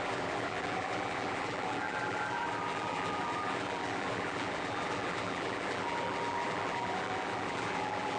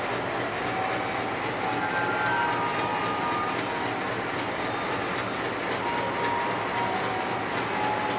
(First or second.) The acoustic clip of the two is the second